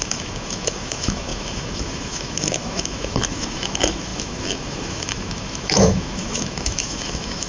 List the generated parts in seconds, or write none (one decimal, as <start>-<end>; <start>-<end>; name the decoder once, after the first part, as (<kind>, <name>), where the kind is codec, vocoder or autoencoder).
0.0-7.5 (autoencoder, DAC-VAE)